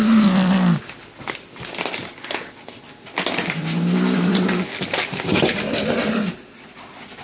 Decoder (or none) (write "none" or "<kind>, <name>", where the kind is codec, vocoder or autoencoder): none